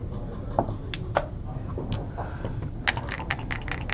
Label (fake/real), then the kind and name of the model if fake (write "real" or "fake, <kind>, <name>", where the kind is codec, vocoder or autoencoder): real